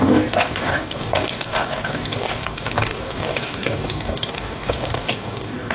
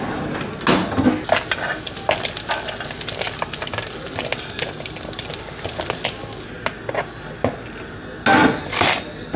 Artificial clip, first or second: first